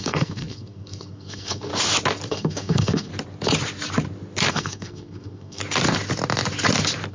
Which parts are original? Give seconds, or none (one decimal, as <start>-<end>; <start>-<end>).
1.7-2.3; 3.1-4.5; 5.6-7.1